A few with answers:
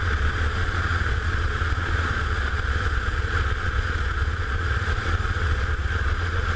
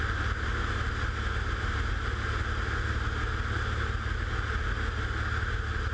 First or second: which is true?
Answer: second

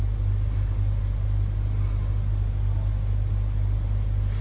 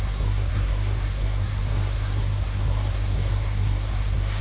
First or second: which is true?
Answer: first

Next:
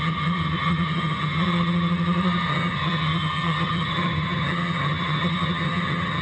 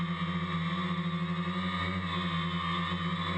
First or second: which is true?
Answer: second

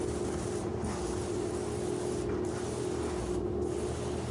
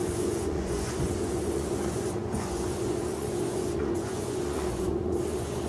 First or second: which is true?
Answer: first